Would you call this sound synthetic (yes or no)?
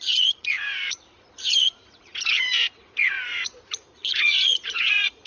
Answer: yes